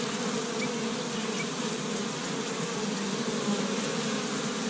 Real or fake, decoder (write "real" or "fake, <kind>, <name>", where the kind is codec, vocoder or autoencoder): real